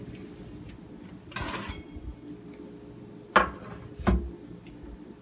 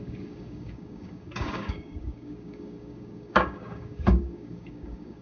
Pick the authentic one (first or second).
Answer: first